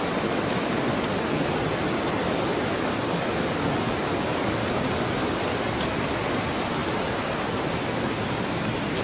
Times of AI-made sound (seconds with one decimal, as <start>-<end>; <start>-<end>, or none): none